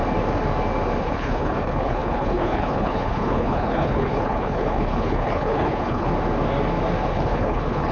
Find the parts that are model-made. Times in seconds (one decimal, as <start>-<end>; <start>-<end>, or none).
1.0-6.1; 7.1-7.9